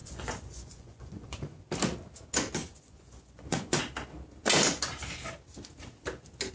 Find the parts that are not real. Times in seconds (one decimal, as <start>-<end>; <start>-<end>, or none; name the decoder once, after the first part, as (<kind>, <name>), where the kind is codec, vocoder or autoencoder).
0.0-1.6 (vocoder, Vocos); 2.6-3.8